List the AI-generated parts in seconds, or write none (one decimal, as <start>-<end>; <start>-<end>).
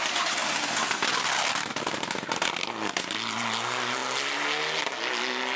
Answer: none